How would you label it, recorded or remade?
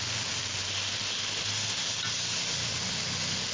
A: recorded